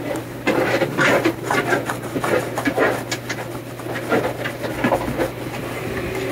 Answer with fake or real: fake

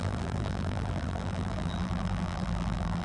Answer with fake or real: fake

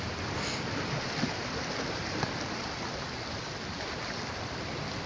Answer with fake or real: fake